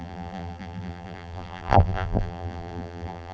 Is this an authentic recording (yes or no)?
no